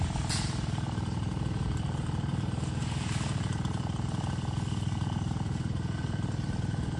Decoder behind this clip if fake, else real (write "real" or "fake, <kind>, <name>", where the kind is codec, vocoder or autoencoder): real